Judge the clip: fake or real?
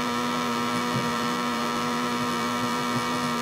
fake